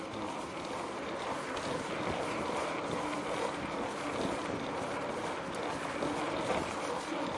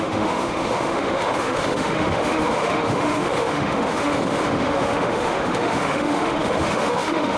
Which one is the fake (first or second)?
second